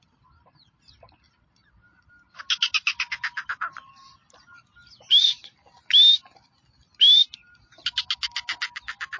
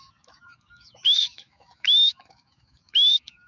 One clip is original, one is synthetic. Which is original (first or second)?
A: first